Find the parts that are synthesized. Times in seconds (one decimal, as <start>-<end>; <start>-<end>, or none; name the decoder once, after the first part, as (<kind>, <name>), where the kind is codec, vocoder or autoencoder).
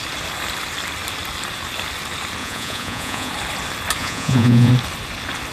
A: 2.4-3.3 (vocoder, Vocos); 4.0-4.7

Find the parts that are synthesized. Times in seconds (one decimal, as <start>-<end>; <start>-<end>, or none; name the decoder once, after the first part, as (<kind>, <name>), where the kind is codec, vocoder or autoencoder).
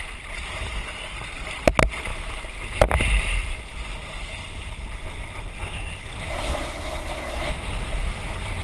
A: 6.3-7.5 (codec, SNAC)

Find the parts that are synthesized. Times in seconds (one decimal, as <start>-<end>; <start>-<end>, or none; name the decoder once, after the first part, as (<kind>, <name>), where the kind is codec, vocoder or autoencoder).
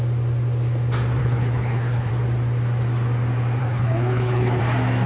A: 1.2-2.1 (codec, HILCodec); 3.6-4.6